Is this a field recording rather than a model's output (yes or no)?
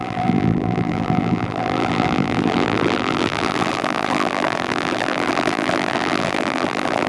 no